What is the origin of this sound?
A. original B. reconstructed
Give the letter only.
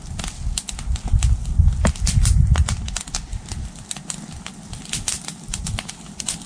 A